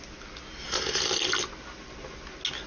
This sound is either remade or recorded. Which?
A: recorded